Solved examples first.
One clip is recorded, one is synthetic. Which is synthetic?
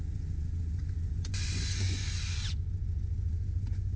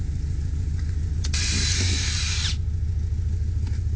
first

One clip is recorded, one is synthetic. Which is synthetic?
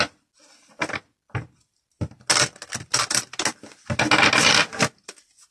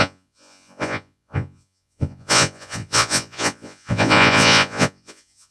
second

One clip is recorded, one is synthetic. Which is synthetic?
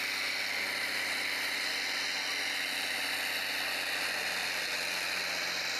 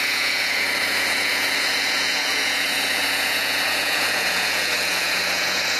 second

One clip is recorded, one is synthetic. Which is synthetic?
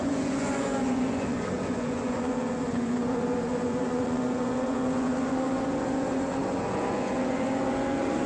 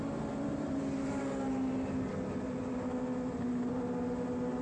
first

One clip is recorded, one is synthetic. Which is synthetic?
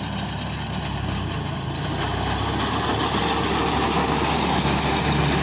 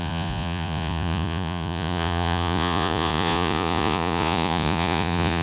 second